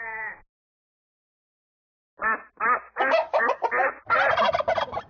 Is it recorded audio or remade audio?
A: recorded